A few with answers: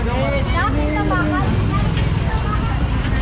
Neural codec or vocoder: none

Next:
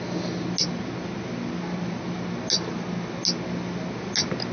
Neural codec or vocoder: none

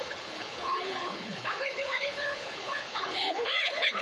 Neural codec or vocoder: codec, HILCodec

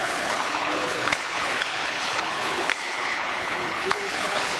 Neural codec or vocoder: codec, HILCodec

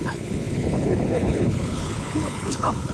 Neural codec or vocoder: codec, HILCodec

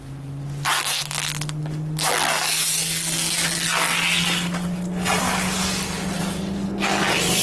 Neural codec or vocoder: none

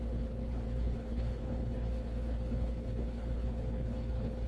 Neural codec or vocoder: codec, HILCodec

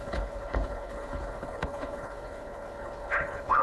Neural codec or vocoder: codec, HILCodec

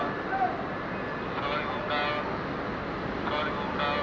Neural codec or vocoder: none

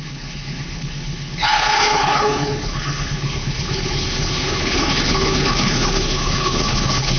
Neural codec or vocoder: codec, HILCodec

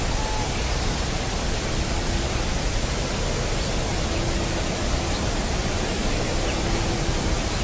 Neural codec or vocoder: none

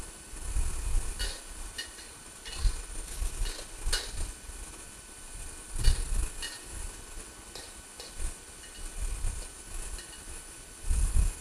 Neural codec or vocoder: none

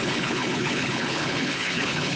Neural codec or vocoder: codec, HILCodec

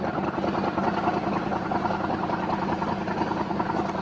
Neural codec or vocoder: none